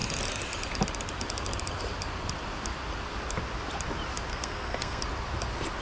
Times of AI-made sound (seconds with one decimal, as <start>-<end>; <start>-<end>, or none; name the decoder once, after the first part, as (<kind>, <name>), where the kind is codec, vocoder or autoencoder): 4.3-5.0 (codec, SNAC)